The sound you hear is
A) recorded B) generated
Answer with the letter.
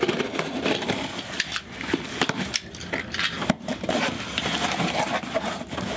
A